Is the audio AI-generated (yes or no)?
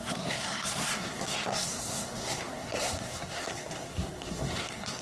yes